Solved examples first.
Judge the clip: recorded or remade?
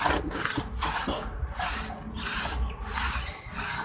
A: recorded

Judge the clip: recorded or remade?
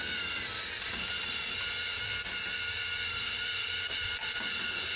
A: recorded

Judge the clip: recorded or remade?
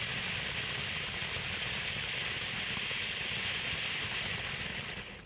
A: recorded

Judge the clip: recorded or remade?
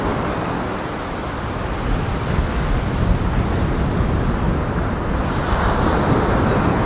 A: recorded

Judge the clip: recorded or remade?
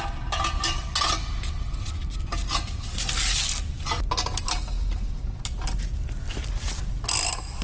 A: recorded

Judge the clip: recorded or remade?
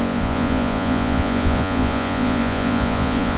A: remade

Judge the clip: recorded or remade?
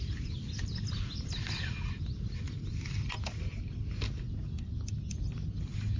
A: recorded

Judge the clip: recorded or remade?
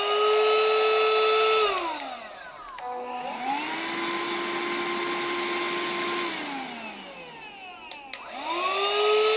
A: recorded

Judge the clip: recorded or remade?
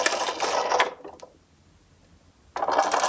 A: recorded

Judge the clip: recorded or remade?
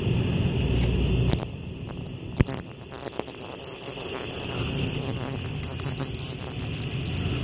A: recorded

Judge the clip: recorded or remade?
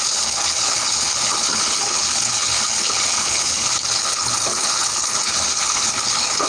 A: remade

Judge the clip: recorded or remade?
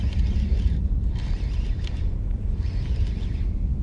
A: recorded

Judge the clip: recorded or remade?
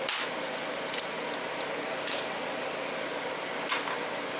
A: recorded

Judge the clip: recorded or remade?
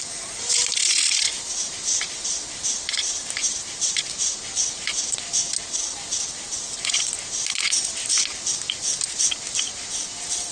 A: recorded